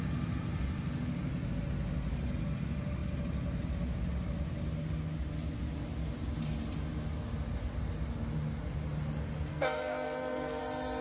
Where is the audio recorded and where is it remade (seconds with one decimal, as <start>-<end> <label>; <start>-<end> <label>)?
0.0-9.5 recorded; 9.5-10.6 remade; 10.6-11.0 recorded